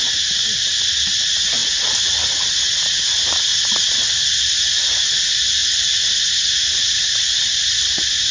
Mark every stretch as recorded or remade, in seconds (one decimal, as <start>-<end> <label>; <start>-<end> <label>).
0.0-3.8 recorded; 3.8-4.3 remade; 4.3-5.6 recorded; 5.6-6.2 remade; 6.2-8.3 recorded